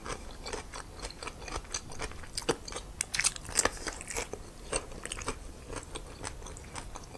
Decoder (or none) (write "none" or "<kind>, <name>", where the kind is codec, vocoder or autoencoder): none